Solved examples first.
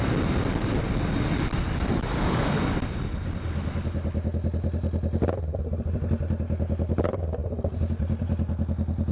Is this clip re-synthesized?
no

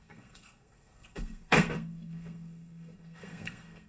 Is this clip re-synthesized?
yes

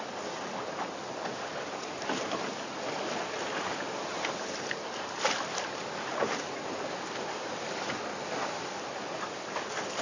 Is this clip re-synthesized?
no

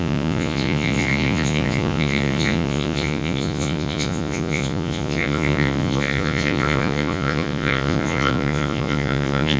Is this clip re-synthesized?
yes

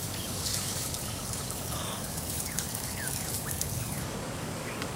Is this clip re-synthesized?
yes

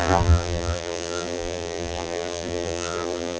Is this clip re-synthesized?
yes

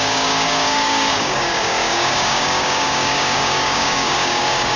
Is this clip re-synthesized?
yes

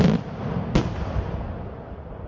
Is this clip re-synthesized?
no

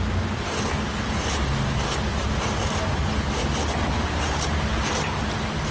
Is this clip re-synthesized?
no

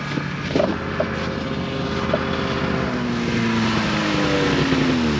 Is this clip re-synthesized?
no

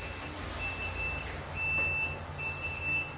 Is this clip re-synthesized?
no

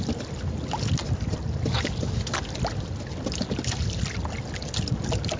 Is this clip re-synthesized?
no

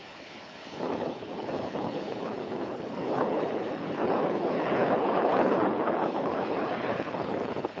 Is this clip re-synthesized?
yes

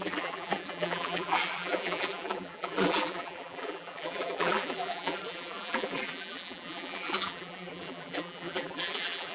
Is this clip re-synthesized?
yes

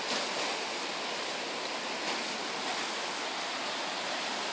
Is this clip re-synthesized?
no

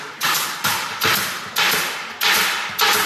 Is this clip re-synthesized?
no